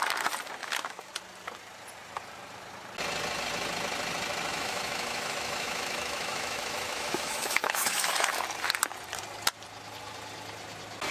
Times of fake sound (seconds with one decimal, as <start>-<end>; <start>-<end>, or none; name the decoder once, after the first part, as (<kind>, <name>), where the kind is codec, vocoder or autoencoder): 0.6-1.1 (autoencoder, DAC-VAE); 4.5-8.3